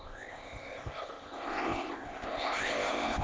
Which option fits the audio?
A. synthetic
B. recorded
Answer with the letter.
A